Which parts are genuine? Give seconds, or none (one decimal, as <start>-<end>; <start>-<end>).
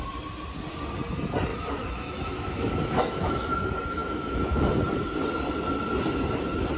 0.0-1.5; 3.6-4.0; 4.7-6.8